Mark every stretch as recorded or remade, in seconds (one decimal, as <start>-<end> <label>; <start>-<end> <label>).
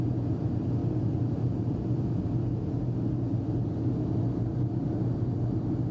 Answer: 0.0-5.9 recorded